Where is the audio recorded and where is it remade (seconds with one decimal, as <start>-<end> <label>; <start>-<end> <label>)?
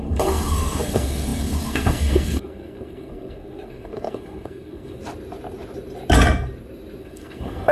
0.0-5.0 remade; 5.0-7.0 recorded; 7.0-7.7 remade